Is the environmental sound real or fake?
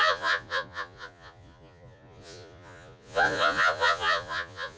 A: fake